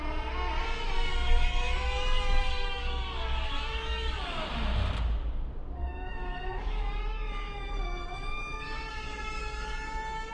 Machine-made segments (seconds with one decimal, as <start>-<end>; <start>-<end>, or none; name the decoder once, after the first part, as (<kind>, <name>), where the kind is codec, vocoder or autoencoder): 1.1-4.5 (codec, DAC); 5.8-10.3